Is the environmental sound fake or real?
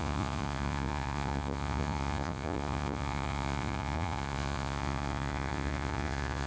fake